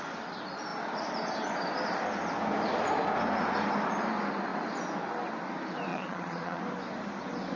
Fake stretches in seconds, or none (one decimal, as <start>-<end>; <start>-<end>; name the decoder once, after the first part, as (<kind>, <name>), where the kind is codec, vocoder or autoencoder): 5.9-6.6 (vocoder, Vocos)